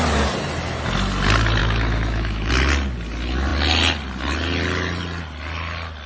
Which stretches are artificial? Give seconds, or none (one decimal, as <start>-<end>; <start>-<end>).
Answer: 1.6-2.5